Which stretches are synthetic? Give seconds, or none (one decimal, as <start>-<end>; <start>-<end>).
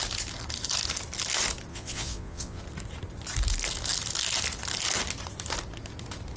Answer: 1.7-2.6